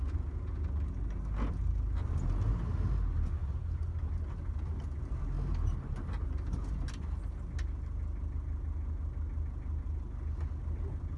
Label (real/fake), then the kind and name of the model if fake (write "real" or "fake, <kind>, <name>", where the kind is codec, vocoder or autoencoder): real